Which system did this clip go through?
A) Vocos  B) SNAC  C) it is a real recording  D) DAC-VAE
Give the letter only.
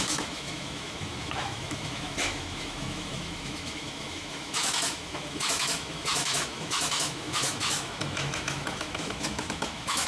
D